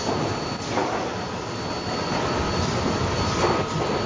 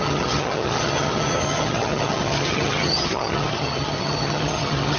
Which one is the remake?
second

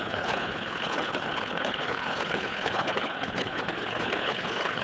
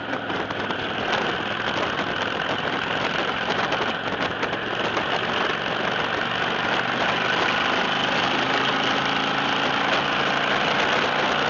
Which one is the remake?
first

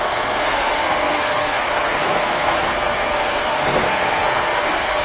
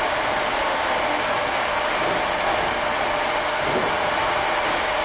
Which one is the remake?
first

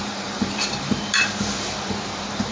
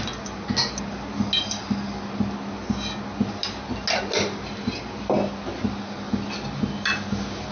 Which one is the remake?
first